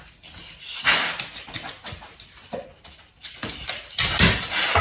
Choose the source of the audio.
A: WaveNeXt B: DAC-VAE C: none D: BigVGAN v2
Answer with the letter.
C